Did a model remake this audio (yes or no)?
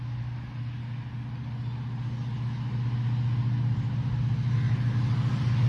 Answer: no